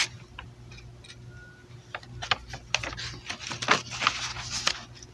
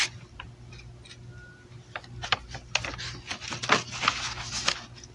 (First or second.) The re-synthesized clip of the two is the second